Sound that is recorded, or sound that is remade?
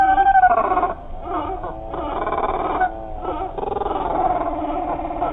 recorded